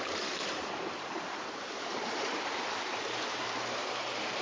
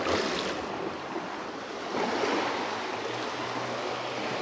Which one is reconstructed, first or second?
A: first